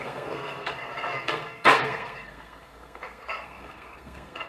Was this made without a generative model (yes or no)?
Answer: no